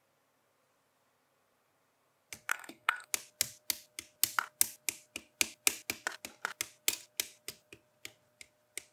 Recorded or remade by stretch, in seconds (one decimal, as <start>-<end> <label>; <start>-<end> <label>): 0.0-2.5 recorded; 2.5-3.1 remade; 3.1-8.9 recorded